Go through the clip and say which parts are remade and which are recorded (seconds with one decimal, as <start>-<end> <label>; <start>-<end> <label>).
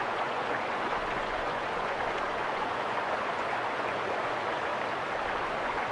0.0-4.7 remade; 4.7-5.4 recorded; 5.4-5.9 remade